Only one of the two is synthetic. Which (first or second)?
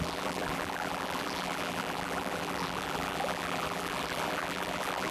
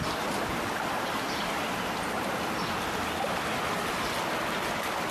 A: first